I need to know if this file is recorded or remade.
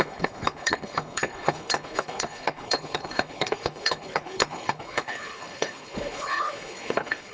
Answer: remade